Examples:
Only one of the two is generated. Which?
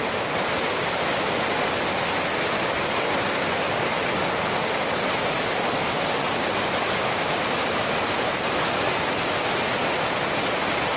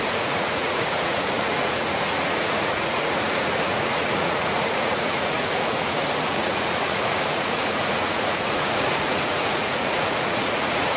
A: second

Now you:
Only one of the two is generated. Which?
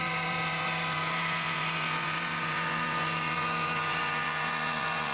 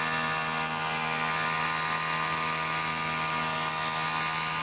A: first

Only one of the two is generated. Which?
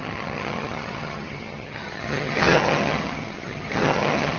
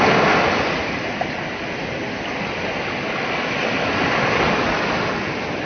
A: first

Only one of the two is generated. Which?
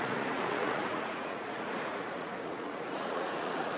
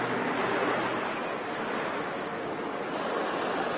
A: first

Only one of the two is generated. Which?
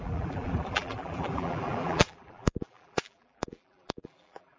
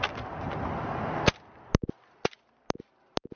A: first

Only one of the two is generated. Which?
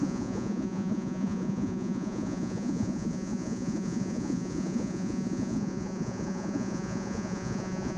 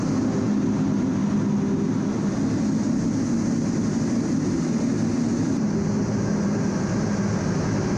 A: first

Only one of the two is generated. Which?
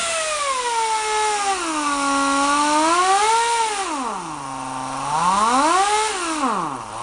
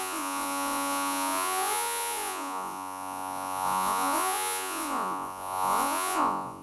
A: second